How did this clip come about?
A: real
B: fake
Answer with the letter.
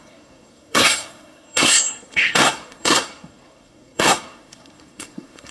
B